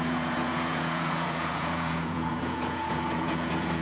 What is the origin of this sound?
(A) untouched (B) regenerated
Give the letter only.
B